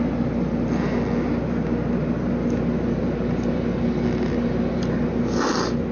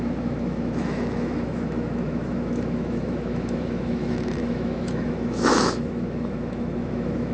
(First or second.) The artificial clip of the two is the second